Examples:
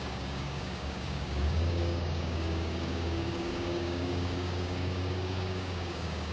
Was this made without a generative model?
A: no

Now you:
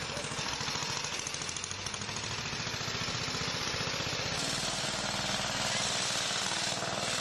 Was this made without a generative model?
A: yes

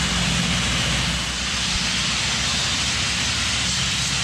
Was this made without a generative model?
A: yes